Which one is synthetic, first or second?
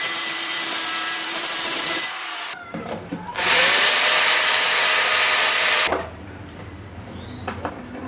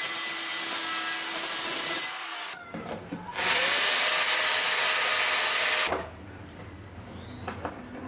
first